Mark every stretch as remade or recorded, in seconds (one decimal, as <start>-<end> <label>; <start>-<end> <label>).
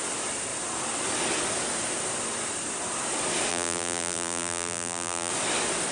0.0-3.5 recorded; 3.5-5.3 remade; 5.3-5.9 recorded